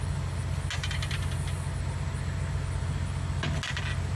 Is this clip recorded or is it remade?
recorded